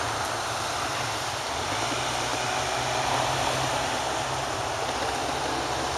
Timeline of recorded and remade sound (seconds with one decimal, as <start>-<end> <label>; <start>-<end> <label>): 0.0-6.0 recorded